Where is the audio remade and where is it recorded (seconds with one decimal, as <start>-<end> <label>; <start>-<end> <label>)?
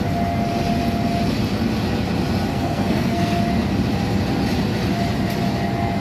0.0-2.5 recorded; 2.5-3.4 remade; 3.4-6.0 recorded